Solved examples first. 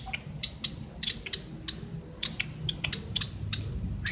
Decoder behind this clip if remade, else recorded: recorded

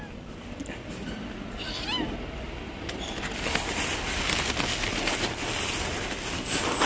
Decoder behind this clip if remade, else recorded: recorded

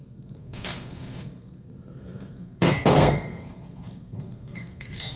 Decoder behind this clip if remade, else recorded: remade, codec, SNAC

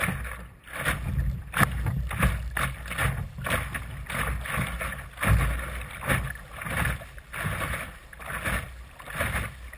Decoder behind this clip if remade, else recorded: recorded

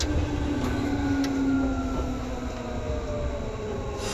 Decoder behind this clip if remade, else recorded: recorded